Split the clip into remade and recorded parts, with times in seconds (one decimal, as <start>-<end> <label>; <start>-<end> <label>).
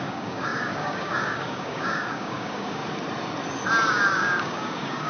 0.0-2.8 remade; 2.8-3.9 recorded; 3.9-5.1 remade